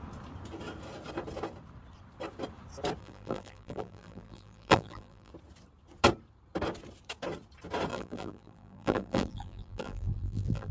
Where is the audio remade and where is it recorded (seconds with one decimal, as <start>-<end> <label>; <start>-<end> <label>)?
0.0-3.0 recorded; 3.0-5.3 remade; 5.3-7.9 recorded; 7.9-10.7 remade